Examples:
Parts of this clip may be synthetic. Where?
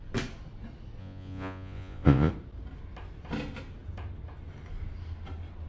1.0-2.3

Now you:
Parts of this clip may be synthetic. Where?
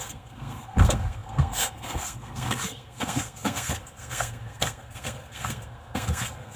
0.0-6.6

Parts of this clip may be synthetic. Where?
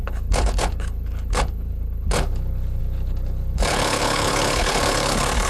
0.0-5.5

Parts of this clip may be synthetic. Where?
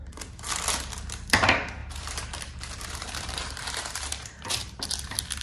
1.8-5.0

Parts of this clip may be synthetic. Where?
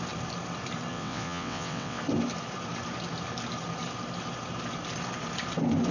0.9-2.0